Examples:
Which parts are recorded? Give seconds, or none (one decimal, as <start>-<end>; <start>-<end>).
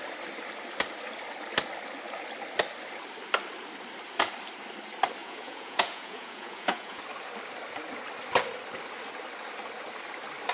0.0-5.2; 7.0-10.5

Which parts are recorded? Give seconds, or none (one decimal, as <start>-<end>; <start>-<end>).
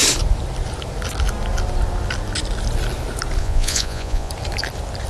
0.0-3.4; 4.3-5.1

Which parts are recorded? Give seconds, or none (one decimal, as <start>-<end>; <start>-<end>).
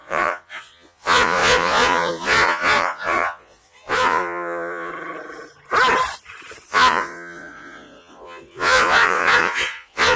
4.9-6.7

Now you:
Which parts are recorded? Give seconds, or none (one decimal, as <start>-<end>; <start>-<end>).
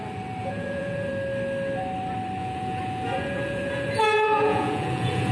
0.0-0.4; 1.1-2.4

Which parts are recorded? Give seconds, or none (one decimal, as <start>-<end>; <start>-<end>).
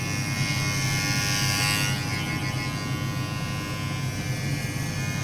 0.0-5.2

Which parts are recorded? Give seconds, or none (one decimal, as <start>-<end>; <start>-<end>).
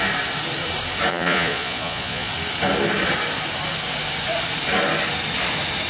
0.0-1.1; 2.3-5.9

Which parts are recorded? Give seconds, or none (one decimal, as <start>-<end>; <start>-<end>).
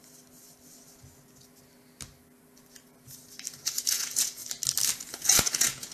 0.0-3.5; 4.4-5.0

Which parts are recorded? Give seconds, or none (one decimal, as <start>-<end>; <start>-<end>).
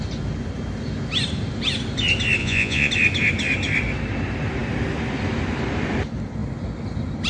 0.0-2.4; 2.9-7.3